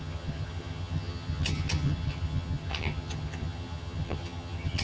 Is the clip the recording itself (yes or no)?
no